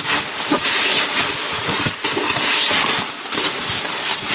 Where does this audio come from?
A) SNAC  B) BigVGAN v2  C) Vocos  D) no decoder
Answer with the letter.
D